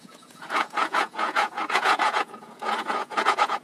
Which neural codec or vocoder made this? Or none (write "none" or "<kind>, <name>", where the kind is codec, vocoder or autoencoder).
vocoder, Vocos